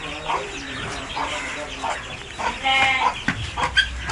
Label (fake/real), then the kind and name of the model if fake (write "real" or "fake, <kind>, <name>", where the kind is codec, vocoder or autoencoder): real